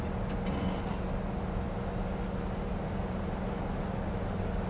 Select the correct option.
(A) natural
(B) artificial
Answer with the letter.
A